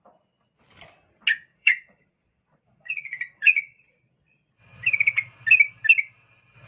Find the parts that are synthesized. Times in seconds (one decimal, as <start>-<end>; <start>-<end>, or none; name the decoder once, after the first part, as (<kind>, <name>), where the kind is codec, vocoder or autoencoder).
1.5-4.5 (vocoder, Vocos)